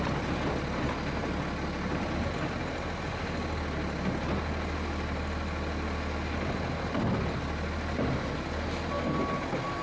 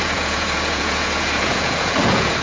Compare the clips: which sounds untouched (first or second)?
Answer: first